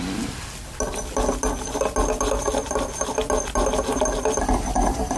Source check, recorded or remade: recorded